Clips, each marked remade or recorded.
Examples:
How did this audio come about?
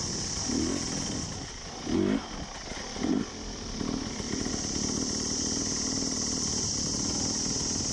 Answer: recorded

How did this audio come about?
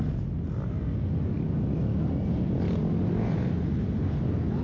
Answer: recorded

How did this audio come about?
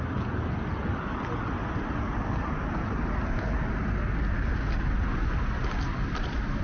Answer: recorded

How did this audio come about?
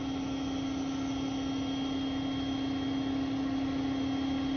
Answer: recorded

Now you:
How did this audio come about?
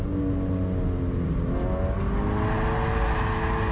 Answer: recorded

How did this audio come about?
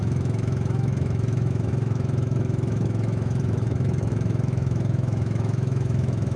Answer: remade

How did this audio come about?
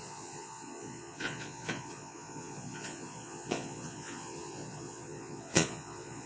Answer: remade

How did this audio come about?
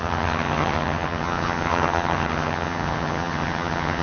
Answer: remade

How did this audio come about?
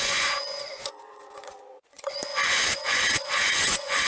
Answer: remade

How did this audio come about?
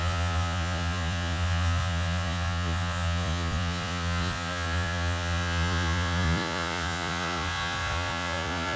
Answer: remade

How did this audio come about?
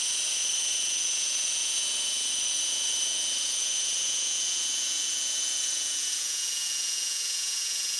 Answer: remade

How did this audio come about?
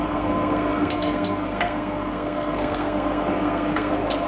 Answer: remade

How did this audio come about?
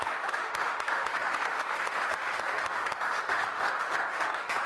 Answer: remade